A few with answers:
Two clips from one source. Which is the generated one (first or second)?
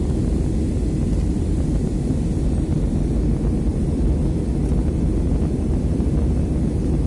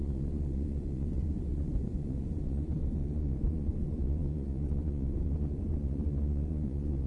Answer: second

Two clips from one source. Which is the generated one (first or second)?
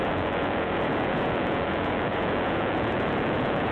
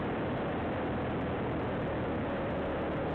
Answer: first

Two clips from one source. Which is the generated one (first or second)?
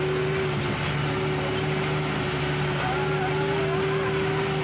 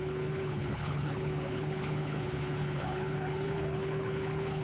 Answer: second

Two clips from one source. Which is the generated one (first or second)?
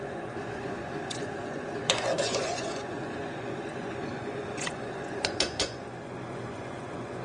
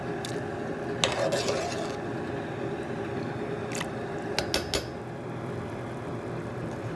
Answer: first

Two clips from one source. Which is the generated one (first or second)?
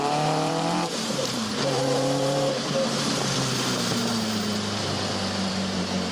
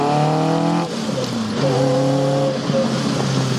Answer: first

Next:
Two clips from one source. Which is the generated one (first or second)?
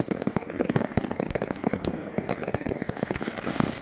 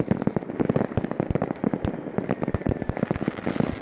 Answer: first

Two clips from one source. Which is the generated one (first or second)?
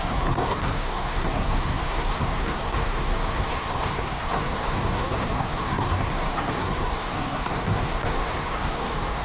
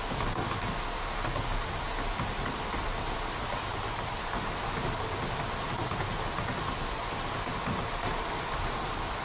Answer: first